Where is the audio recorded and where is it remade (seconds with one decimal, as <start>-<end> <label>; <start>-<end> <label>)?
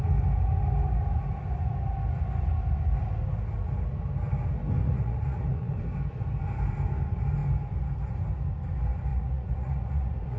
0.0-4.8 recorded; 4.8-5.8 remade; 5.8-9.1 recorded; 9.1-10.4 remade